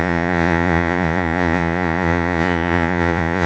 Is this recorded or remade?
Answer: remade